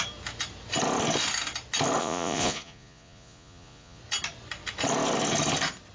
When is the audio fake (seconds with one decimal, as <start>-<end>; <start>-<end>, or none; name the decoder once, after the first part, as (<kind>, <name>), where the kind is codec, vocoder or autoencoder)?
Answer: 2.0-4.0 (vocoder, Vocos)